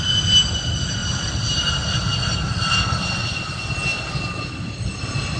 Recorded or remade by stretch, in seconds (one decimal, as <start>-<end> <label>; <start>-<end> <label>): 0.0-1.0 recorded; 1.0-1.7 remade; 1.7-5.4 recorded